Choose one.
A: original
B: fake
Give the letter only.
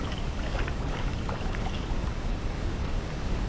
B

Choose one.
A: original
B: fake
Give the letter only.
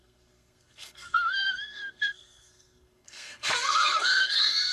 B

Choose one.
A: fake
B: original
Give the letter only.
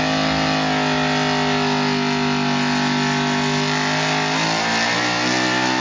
B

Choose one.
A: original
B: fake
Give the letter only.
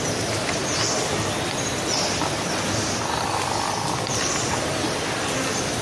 A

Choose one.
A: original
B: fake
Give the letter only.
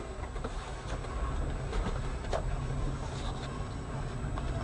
A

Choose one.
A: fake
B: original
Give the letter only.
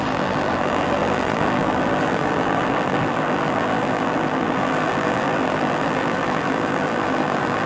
A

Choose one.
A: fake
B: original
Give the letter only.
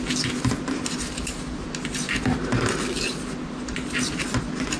B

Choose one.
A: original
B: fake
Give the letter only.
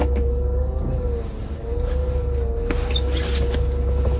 A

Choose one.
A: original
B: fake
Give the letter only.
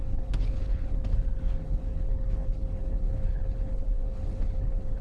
B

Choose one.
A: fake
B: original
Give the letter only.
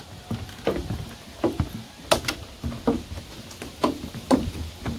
B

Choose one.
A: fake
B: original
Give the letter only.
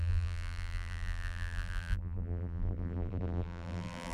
A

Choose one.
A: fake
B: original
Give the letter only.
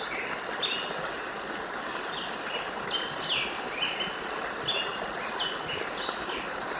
B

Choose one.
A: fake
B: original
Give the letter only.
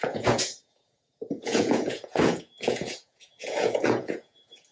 A